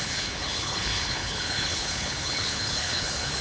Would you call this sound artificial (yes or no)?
yes